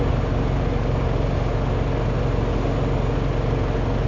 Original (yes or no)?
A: yes